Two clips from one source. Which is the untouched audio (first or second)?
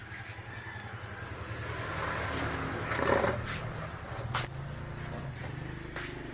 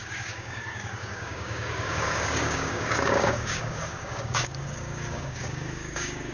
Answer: first